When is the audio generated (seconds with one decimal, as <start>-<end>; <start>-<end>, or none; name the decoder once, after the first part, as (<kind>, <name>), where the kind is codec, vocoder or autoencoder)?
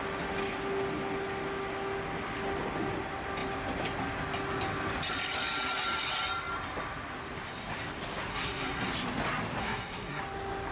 8.3-8.9 (codec, SNAC); 9.6-10.2